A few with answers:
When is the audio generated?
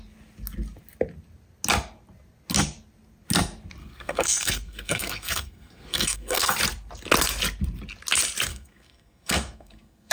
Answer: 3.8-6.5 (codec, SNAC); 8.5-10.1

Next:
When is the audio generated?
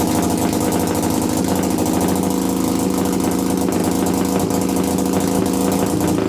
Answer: none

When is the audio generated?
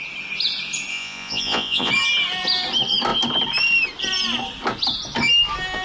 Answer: 0.9-1.9 (vocoder, Vocos)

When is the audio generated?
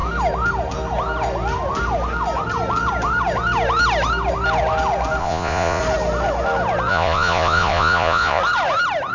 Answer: 5.2-5.8 (vocoder, Vocos); 6.9-8.4